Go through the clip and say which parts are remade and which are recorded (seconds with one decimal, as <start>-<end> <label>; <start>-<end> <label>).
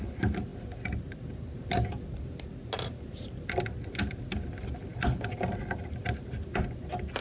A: 0.0-7.2 recorded